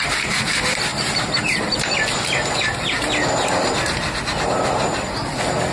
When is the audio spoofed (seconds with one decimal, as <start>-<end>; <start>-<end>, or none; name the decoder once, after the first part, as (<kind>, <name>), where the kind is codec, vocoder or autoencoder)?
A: none